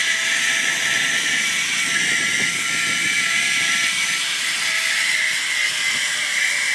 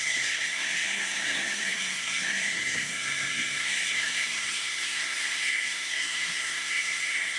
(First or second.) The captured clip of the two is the first